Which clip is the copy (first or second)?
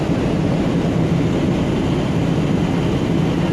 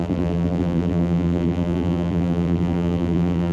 second